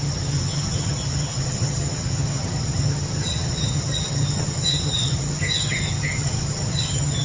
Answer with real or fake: fake